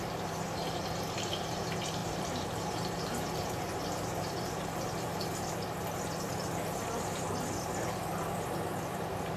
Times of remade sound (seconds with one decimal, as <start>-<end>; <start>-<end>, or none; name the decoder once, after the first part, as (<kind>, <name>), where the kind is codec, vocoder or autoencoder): 2.0-4.4 (vocoder, BigVGAN v2)